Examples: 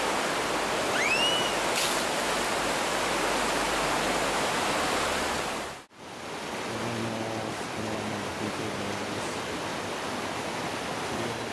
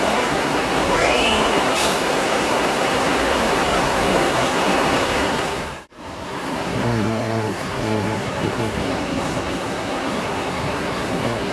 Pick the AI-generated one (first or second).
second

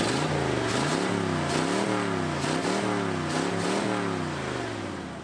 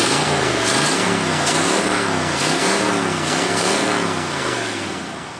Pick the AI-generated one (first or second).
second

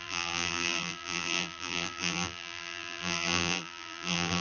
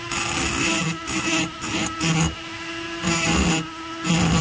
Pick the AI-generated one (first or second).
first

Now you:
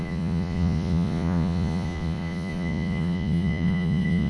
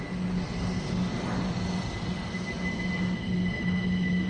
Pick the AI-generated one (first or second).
first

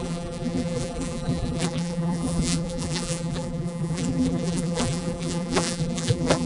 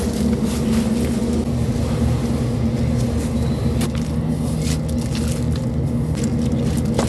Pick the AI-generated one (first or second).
first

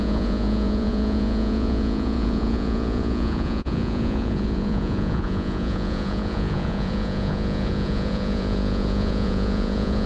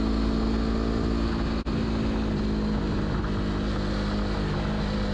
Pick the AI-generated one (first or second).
first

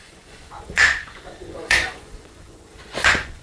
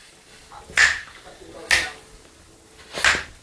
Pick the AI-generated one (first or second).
first